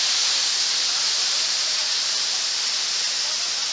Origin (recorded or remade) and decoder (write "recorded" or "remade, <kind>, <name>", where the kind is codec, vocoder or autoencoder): recorded